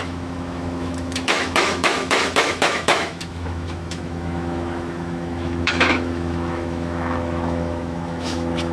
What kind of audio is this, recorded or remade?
remade